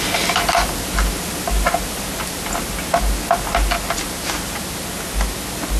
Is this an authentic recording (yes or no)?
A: yes